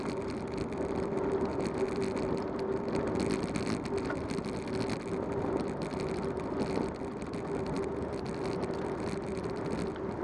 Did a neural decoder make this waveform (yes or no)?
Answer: no